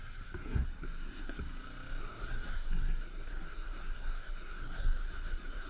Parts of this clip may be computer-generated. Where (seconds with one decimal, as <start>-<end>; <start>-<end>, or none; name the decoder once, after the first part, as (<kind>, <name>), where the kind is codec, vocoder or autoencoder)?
0.4-1.4 (codec, SNAC); 2.0-5.7